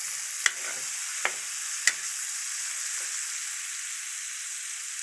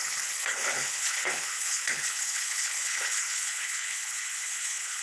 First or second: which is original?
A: first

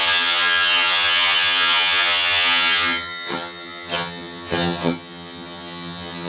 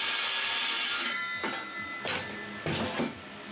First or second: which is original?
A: second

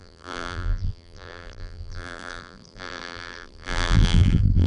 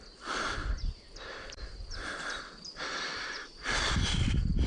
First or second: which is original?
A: second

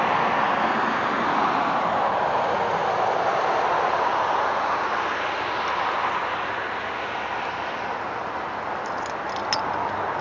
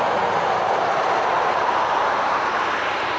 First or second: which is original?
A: first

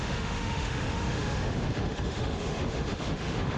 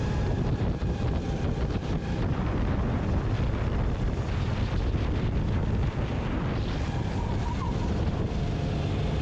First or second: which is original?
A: second